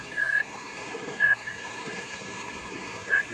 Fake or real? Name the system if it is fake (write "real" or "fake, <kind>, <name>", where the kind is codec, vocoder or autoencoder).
fake, codec, SNAC